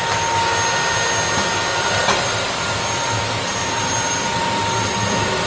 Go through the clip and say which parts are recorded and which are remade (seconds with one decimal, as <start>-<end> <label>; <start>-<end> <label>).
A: 0.0-2.0 recorded; 2.0-5.5 remade